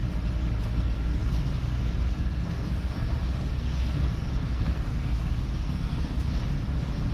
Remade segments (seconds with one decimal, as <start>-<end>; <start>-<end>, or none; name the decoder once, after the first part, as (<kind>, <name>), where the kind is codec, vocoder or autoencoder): 0.6-6.4 (codec, SNAC)